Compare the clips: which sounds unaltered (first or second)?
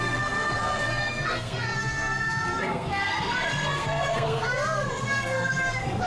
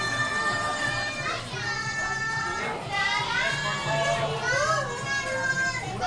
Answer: second